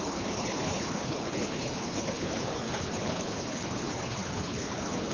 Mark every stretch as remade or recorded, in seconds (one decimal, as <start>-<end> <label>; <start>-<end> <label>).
0.0-5.1 remade